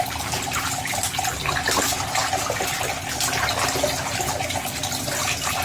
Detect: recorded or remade recorded